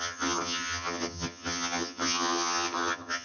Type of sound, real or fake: fake